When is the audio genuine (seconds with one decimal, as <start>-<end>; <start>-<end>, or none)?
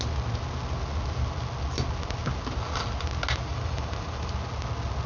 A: 0.0-3.5; 4.3-5.1